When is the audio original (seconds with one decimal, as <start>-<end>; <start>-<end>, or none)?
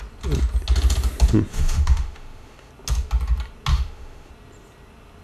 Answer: 0.0-1.5; 2.7-3.7; 4.3-5.2